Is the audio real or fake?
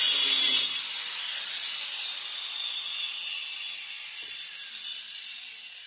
real